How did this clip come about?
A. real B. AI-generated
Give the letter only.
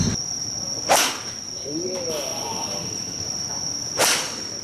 A